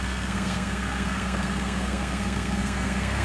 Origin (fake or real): fake